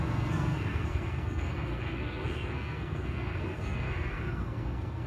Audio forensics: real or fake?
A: fake